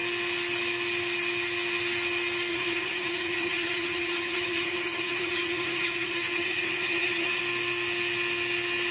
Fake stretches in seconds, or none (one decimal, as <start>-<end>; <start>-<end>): 2.5-7.4